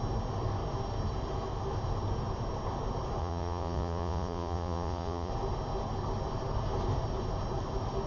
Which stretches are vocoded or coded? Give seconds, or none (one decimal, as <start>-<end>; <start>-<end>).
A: 3.2-5.3